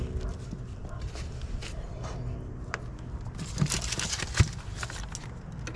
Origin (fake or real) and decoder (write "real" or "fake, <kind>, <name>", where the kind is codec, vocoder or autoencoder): real